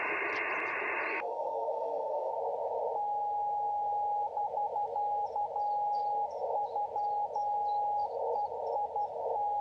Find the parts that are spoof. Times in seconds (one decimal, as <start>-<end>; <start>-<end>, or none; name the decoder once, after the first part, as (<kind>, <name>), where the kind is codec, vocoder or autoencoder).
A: 1.1-2.3 (codec, SNAC)